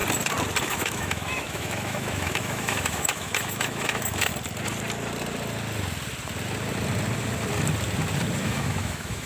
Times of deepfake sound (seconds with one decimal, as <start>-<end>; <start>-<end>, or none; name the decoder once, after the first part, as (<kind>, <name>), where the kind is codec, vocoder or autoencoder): 0.6-4.3 (autoencoder, DAC-VAE); 8.4-9.3